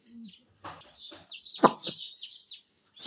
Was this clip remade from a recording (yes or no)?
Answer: no